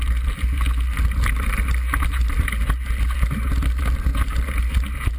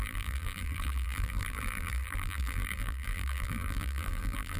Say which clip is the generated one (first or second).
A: second